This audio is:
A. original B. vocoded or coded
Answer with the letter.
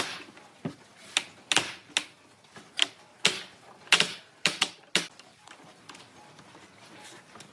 A